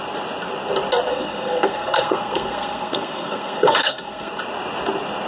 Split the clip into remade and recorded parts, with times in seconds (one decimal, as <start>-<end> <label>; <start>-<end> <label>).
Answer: 0.0-1.1 recorded; 1.1-4.3 remade; 4.3-5.3 recorded

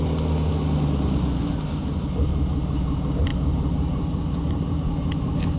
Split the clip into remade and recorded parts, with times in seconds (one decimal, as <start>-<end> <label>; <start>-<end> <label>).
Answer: 0.0-5.6 recorded

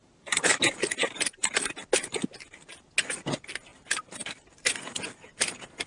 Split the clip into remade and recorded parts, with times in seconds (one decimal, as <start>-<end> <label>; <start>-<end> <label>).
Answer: 0.0-0.6 remade; 0.6-1.0 recorded; 1.0-1.6 remade; 1.6-3.7 recorded; 3.7-5.0 remade; 5.0-5.9 recorded